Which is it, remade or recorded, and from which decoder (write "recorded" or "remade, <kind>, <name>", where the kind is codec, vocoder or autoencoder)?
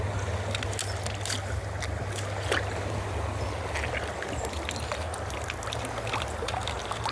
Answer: recorded